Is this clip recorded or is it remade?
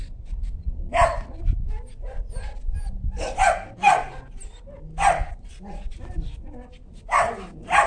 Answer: recorded